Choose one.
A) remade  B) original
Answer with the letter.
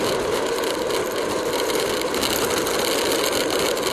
B